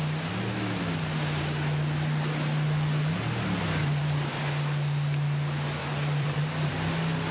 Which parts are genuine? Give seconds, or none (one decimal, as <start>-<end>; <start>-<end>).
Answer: 0.0-3.8; 4.4-5.8; 6.7-7.3